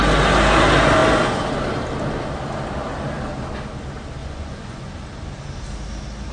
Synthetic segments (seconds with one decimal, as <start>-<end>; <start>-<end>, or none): 4.2-4.9